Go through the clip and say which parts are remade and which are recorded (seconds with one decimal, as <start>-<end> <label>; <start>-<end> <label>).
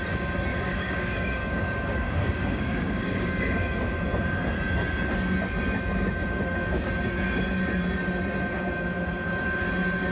0.0-0.5 recorded; 0.5-3.8 remade; 3.8-10.1 recorded